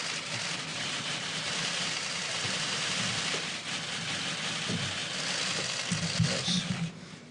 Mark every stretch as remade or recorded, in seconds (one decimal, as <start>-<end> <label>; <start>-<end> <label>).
0.0-0.7 recorded; 0.7-3.0 remade; 3.0-7.3 recorded